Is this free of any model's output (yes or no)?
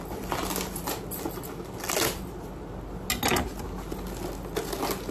yes